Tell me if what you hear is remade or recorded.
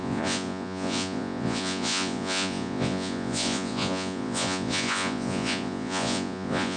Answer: remade